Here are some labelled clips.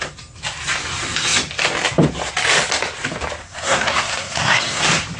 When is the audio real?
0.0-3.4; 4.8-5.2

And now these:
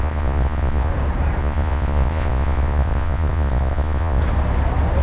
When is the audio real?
0.9-1.4; 4.2-5.0

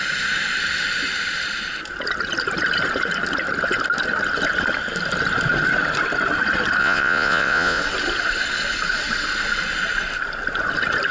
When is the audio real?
0.0-6.8; 7.8-11.1

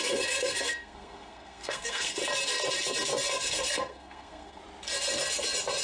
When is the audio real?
2.2-3.3; 4.6-5.8

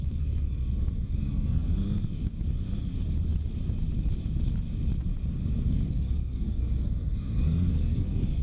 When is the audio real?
0.6-1.2; 1.8-5.9

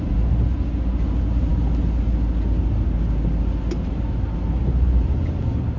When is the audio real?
0.0-5.8

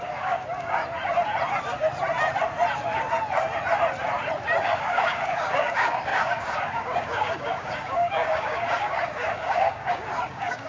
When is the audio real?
0.8-4.6

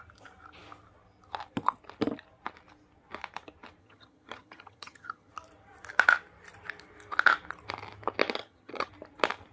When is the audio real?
0.0-3.8; 5.3-8.4; 8.9-9.5